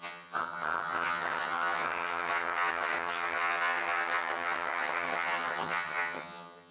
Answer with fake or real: fake